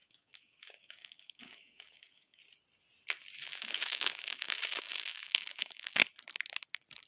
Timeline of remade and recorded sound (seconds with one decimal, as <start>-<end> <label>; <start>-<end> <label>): 0.0-2.4 remade; 2.4-3.4 recorded; 3.4-6.0 remade; 6.0-7.1 recorded